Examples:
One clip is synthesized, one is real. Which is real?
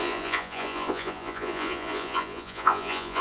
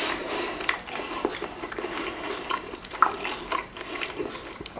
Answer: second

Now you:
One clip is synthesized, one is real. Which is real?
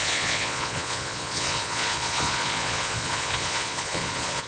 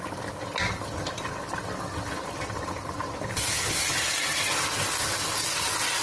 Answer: second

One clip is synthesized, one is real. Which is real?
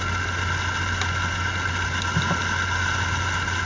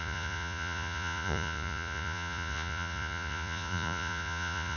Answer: first